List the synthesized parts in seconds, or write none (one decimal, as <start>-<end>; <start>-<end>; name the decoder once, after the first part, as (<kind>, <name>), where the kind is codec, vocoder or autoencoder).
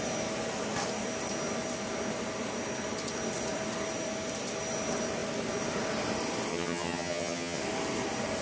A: 6.5-7.6 (vocoder, HiFi-GAN)